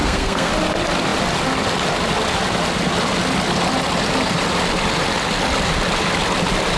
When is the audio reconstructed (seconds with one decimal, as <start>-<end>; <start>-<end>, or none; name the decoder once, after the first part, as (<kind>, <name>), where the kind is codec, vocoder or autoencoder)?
0.0-0.5 (codec, SNAC)